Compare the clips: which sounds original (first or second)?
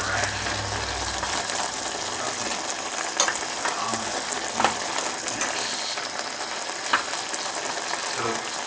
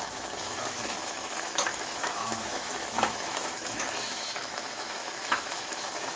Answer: first